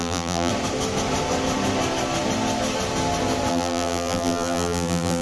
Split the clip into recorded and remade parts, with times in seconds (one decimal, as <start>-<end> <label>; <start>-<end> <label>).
0.0-0.5 remade; 0.5-3.5 recorded; 3.5-5.2 remade